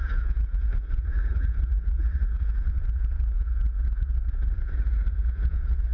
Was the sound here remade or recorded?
remade